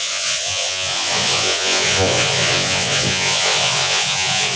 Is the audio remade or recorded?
remade